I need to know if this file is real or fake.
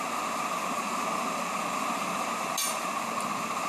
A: real